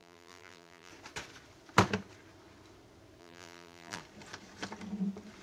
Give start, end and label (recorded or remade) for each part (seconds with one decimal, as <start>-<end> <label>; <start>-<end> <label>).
0.0-0.9 remade; 0.9-3.2 recorded; 3.2-4.0 remade; 4.0-5.4 recorded